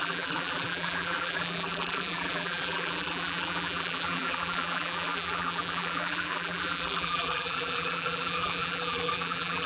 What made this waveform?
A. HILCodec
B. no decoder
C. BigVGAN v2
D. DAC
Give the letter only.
C